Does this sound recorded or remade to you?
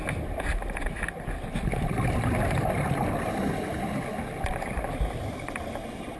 recorded